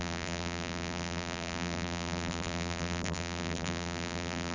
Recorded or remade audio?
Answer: remade